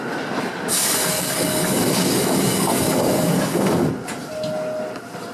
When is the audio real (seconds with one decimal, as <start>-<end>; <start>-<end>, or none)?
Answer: 0.0-0.7; 3.9-5.3